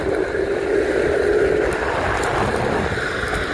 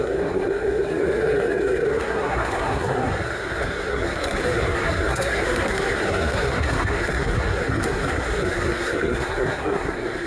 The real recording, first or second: first